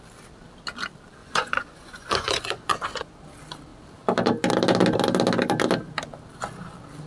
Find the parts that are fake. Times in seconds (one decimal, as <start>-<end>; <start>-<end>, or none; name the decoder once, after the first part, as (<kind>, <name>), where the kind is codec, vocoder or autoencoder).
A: 1.2-3.1 (vocoder, Vocos)